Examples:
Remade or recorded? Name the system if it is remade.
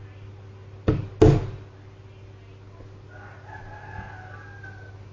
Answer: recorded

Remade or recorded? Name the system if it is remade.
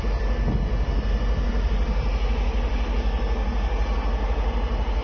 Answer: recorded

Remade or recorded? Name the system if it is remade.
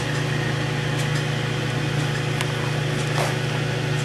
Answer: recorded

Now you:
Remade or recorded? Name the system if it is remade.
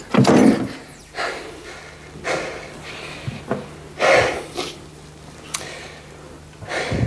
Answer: recorded